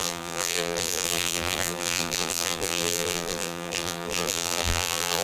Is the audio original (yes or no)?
no